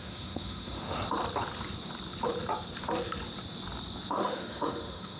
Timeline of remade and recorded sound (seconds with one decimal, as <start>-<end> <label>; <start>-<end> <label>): 0.0-1.0 remade; 1.0-4.1 recorded; 4.1-5.2 remade